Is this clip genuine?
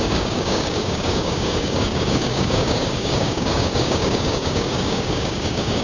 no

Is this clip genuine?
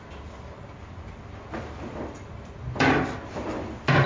yes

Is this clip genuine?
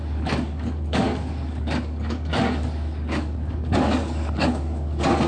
no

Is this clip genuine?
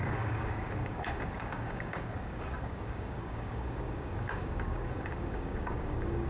no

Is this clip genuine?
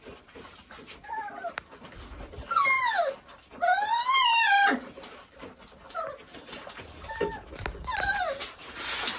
yes